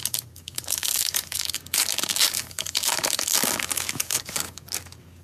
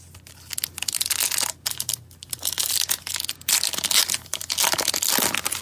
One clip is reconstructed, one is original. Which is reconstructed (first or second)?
first